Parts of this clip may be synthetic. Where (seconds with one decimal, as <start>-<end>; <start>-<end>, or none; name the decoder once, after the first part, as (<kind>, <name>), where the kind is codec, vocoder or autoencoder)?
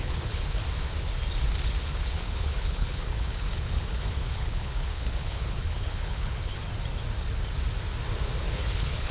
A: 0.0-0.6 (codec, HILCodec); 1.8-6.6; 8.5-9.1